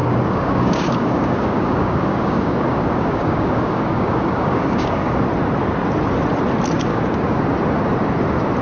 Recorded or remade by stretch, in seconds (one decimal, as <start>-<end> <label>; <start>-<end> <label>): 0.0-5.2 remade; 5.2-6.9 recorded; 6.9-7.4 remade; 7.4-8.6 recorded